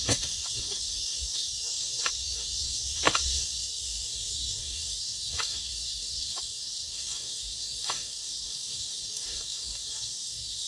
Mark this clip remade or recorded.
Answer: remade